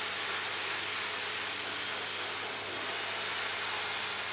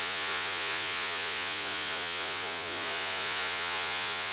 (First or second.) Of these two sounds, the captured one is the first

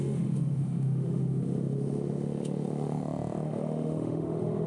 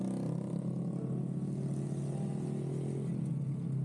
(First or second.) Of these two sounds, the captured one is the second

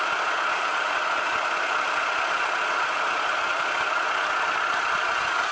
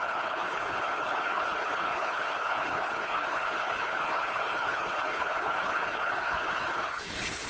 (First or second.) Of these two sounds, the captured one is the first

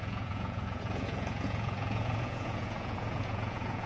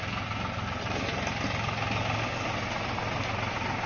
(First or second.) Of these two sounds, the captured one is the second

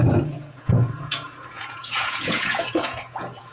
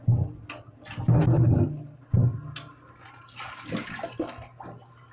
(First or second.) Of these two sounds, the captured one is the second